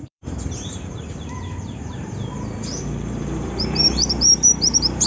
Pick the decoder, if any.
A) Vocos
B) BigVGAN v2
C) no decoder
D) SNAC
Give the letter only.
B